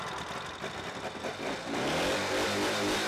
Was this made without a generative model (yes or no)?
yes